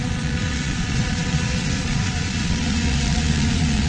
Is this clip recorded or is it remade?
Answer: remade